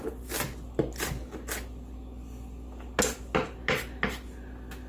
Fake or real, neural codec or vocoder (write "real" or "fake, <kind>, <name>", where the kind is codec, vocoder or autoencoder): real